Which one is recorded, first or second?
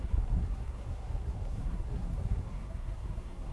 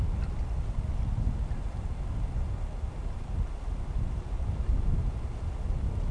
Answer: second